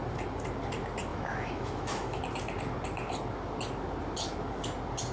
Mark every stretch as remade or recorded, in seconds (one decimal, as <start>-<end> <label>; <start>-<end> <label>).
0.0-1.1 recorded; 1.1-2.2 remade; 2.2-5.1 recorded